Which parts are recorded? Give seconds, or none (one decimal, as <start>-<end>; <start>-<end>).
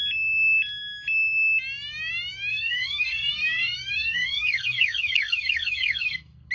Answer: 0.0-2.5